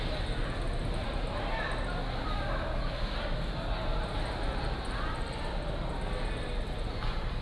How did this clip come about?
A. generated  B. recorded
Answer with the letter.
B